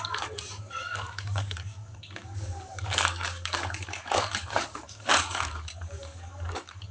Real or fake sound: fake